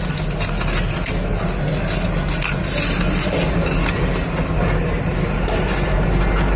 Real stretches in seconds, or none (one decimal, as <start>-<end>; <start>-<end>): 0.0-6.6